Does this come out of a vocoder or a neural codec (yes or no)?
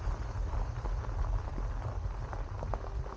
no